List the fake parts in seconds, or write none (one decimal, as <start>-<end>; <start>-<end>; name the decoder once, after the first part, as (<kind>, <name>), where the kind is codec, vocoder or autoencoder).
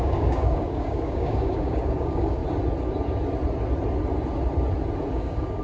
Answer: 0.0-2.4 (codec, DAC); 5.1-5.6